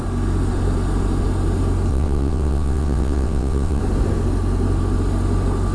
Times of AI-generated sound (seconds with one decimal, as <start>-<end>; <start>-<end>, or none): 1.9-3.8